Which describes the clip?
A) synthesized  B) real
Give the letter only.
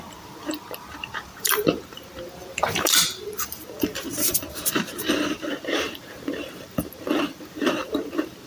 A